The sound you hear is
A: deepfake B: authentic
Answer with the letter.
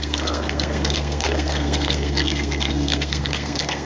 A